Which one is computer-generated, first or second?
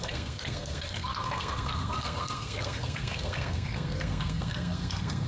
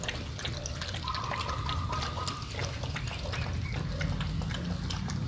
first